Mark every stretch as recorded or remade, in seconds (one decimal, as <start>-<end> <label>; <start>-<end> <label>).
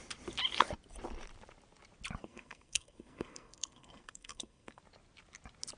0.0-2.2 recorded; 2.2-4.8 remade; 4.8-5.8 recorded